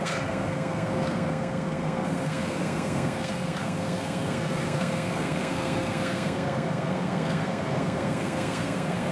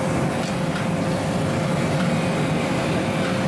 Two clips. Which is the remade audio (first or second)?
first